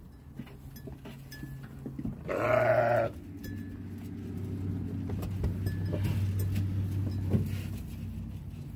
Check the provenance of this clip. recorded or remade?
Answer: recorded